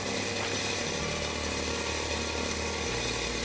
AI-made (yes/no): no